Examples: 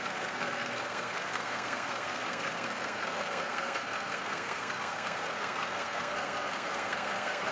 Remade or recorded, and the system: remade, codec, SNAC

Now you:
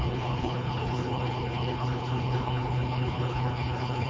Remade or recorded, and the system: remade, codec, HILCodec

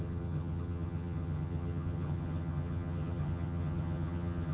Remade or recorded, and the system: remade, vocoder, HiFi-GAN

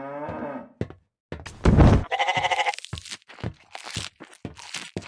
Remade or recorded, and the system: recorded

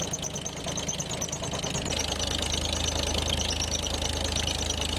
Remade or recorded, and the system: recorded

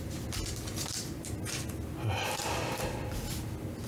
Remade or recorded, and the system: recorded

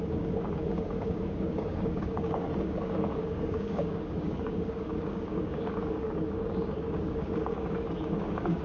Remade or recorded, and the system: remade, codec, DAC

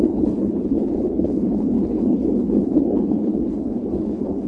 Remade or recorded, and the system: remade, codec, HILCodec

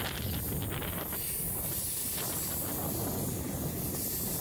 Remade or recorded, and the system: recorded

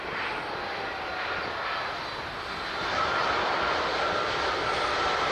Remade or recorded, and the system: recorded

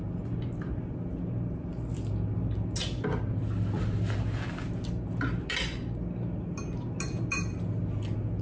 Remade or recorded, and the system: recorded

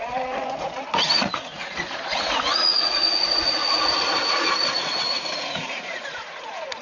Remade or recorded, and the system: remade, vocoder, Vocos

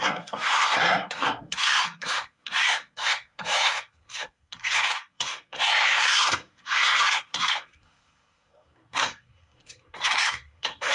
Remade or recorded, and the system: remade, codec, SNAC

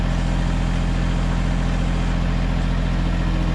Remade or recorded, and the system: recorded